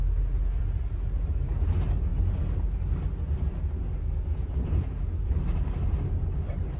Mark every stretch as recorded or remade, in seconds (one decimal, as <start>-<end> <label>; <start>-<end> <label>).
0.0-4.3 recorded; 4.3-5.3 remade; 5.3-6.8 recorded